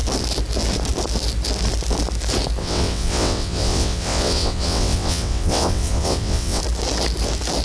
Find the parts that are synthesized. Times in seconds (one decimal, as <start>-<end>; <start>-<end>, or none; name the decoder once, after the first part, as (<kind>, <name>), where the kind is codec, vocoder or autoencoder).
2.6-6.6 (vocoder, WaveNeXt)